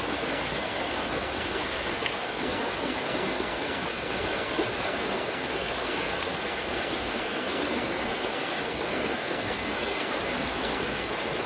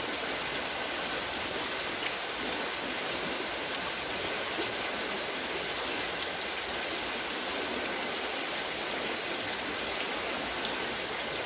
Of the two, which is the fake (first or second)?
first